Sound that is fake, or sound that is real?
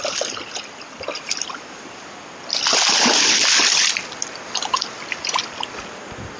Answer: real